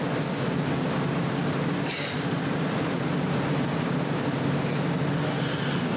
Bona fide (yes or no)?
yes